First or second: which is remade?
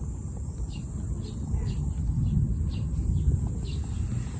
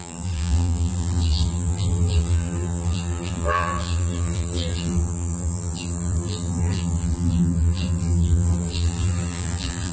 second